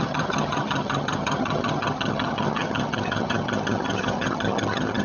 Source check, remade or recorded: remade